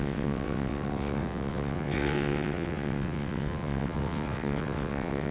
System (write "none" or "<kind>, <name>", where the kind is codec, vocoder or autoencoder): vocoder, WaveNeXt